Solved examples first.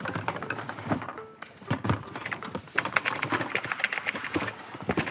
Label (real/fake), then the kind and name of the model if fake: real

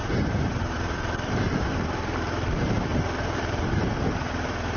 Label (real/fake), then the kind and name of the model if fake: fake, vocoder, BigVGAN v2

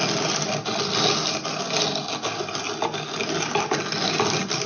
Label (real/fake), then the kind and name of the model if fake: real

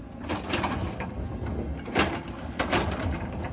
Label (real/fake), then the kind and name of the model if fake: real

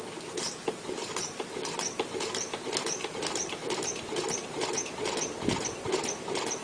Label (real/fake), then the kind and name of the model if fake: fake, vocoder, BigVGAN v2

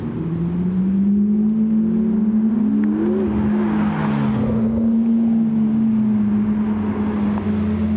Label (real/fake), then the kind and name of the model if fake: real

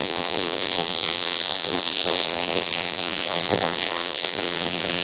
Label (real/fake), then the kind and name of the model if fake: fake, vocoder, BigVGAN v2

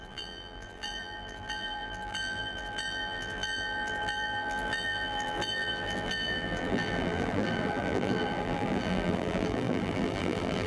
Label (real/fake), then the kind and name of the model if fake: fake, vocoder, BigVGAN v2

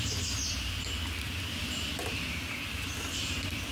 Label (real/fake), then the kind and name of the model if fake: fake, vocoder, BigVGAN v2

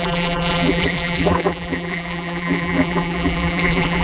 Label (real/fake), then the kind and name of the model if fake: fake, vocoder, BigVGAN v2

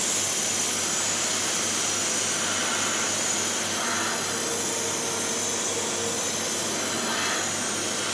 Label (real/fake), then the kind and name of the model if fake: real